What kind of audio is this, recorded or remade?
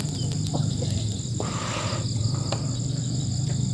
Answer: recorded